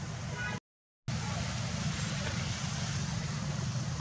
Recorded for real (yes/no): yes